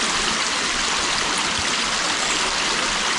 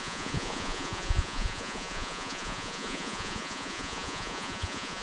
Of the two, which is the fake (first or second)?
second